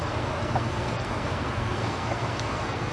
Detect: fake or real fake